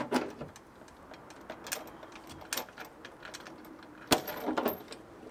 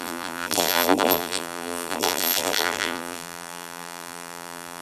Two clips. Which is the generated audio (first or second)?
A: second